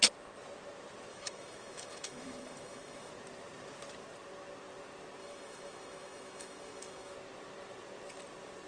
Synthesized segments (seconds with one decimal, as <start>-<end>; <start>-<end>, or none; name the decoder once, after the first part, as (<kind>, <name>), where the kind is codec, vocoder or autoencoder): 1.1-3.1 (autoencoder, DAC-VAE); 5.2-7.1